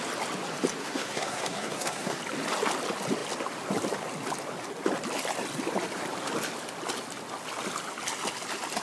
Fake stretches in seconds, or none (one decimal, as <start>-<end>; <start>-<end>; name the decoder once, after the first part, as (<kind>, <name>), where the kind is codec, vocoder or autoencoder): 0.8-2.2 (codec, SNAC)